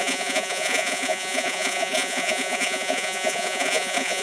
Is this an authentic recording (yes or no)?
no